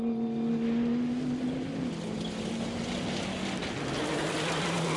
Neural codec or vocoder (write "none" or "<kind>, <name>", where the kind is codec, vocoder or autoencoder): none